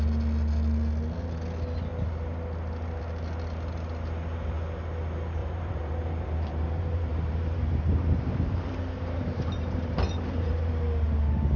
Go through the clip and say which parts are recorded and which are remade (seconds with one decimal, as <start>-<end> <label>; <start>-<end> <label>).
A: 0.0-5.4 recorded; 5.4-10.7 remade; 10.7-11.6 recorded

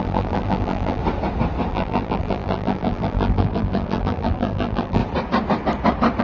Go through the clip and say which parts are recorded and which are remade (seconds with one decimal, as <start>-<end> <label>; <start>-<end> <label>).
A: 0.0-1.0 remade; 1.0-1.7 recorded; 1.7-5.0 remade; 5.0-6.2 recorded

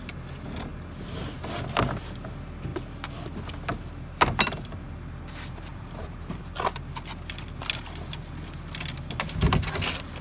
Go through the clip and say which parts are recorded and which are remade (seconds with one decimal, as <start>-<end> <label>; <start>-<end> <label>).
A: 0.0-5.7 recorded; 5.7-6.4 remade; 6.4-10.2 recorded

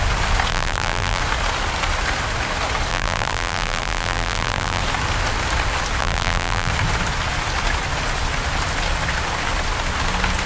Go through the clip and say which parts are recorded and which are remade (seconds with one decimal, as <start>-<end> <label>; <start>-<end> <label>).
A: 0.0-0.5 recorded; 0.5-1.2 remade; 1.2-2.9 recorded; 2.9-4.8 remade; 4.8-6.0 recorded; 6.0-6.7 remade; 6.7-10.5 recorded

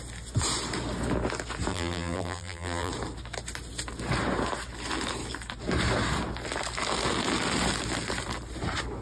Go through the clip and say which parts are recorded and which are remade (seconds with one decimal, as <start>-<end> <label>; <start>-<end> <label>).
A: 0.0-1.7 recorded; 1.7-2.9 remade; 2.9-9.0 recorded

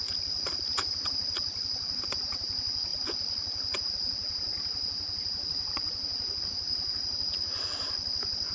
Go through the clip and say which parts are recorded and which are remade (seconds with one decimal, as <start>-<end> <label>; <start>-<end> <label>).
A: 0.0-2.1 remade; 2.1-2.9 recorded; 2.9-3.9 remade; 3.9-8.5 recorded